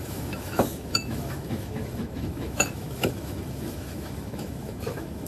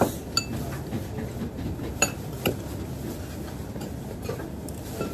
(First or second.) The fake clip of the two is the first